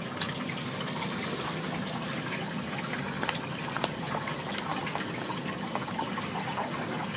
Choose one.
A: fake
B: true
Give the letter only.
B